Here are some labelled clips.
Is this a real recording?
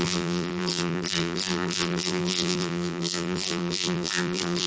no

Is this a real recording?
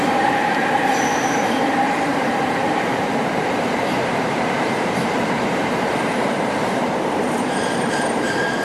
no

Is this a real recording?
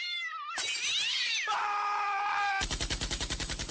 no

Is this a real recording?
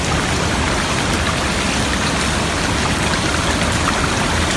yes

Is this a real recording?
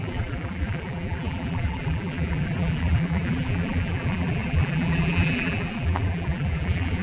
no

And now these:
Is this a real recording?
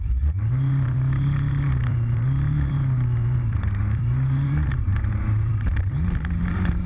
no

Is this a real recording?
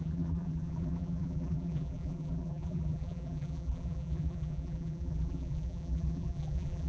no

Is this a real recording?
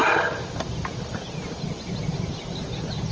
yes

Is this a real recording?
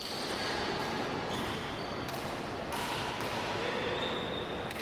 yes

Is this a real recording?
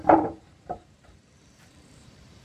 no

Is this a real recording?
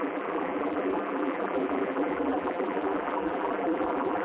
no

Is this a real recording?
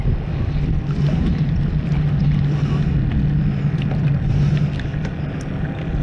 yes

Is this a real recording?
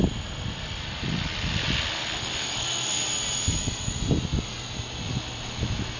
yes